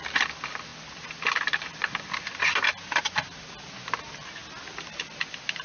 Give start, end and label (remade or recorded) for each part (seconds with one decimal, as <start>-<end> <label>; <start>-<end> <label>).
0.0-5.6 recorded